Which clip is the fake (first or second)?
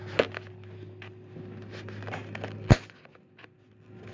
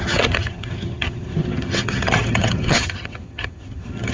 second